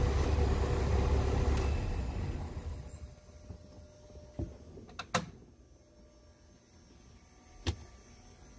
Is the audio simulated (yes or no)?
no